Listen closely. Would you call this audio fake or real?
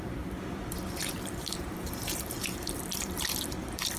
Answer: fake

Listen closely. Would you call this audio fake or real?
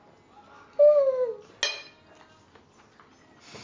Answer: real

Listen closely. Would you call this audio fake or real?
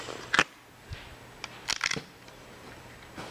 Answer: real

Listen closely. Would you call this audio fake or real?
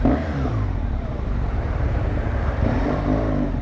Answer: fake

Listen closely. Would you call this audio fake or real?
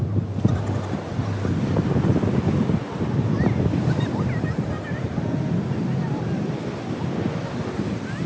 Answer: real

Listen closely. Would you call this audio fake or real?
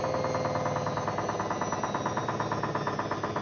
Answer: real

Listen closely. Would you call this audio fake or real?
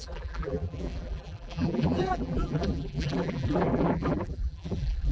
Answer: fake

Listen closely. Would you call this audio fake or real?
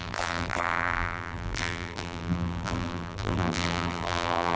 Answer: fake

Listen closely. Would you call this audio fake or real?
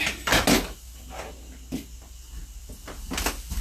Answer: real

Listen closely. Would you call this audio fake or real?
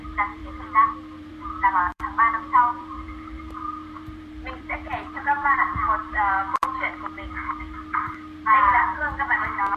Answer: fake